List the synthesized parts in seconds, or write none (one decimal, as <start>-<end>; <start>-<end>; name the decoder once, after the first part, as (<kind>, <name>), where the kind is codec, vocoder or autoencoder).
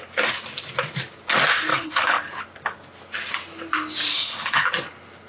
1.7-2.2 (codec, HILCodec); 4.1-4.7